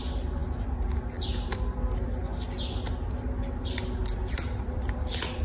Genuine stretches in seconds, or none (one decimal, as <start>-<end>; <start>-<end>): 0.0-5.4